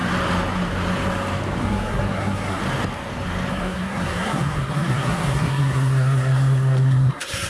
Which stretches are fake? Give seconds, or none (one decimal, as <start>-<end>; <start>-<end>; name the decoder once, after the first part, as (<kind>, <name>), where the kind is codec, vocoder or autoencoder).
1.6-2.6 (codec, SNAC); 3.5-7.5